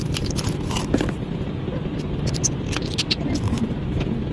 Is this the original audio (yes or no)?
yes